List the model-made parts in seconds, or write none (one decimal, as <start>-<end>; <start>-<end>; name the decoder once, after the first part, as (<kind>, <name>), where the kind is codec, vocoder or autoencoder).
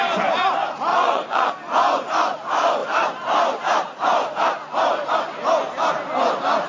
0.9-1.5 (vocoder, WaveNeXt)